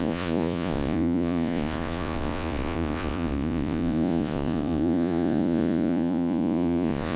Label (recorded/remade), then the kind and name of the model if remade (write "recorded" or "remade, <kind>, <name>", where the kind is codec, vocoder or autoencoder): remade, vocoder, Vocos